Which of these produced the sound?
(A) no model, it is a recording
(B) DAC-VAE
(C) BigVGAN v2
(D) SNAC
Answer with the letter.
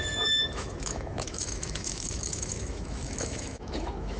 B